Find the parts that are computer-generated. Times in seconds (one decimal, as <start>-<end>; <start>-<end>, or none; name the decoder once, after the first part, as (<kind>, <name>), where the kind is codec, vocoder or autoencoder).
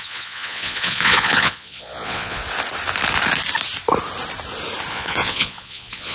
0.0-2.4 (vocoder, Vocos); 4.9-6.1